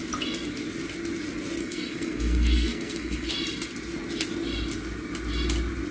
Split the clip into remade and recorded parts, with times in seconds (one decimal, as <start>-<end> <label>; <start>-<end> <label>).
0.0-1.6 recorded; 1.6-3.3 remade; 3.3-5.9 recorded